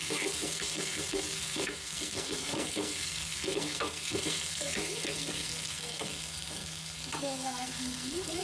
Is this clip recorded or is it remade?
remade